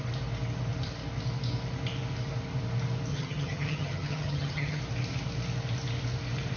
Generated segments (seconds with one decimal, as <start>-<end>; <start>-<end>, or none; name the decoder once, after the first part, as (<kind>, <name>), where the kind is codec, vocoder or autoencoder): 3.1-4.8 (vocoder, HiFi-GAN)